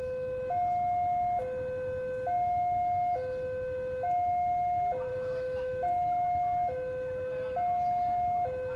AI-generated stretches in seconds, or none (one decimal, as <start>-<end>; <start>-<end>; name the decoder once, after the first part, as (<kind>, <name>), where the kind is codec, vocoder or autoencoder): 5.1-5.9 (autoencoder, DAC-VAE)